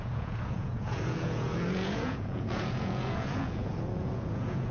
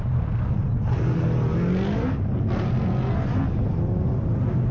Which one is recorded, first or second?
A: second